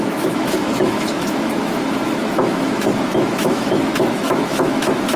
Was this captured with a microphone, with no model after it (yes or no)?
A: no